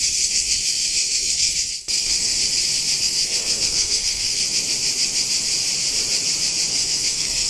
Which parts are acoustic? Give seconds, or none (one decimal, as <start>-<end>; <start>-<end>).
2.4-3.0; 4.4-6.7